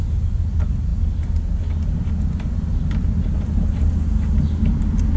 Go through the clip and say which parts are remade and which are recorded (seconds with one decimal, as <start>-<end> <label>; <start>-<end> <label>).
0.0-5.2 recorded